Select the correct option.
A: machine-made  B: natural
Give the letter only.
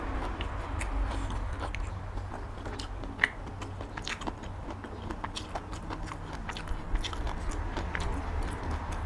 B